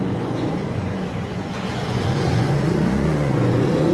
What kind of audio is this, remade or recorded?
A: remade